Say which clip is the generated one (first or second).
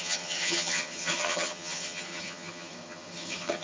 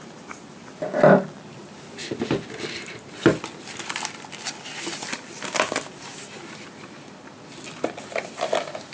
first